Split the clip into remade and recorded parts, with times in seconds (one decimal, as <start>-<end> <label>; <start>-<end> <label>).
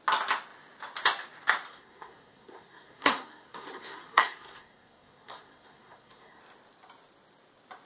0.0-1.7 recorded; 1.7-6.4 remade; 6.4-7.9 recorded